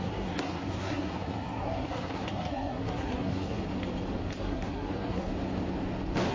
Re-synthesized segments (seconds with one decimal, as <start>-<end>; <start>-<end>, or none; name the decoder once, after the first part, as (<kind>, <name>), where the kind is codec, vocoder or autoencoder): 0.0-3.6 (codec, SNAC); 4.4-5.3